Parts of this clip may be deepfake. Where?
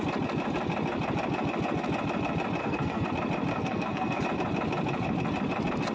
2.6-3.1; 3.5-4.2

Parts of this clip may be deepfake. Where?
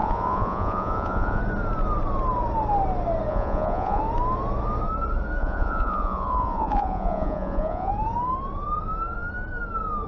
0.0-1.4; 3.3-4.0; 5.4-7.9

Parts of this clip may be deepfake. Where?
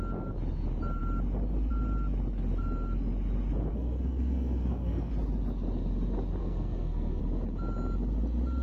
3.7-5.1; 6.4-7.2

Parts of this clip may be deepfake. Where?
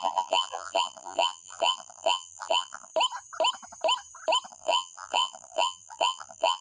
0.0-2.9; 4.5-6.6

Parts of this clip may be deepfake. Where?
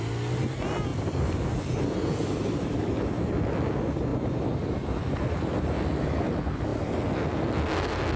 0.9-1.6; 2.2-2.9; 4.1-4.9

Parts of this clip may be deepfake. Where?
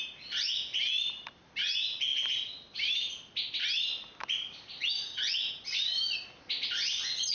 none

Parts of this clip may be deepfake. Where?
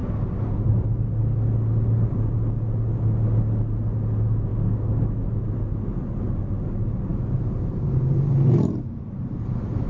7.1-9.9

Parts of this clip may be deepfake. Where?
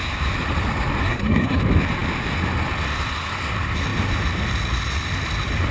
1.0-1.6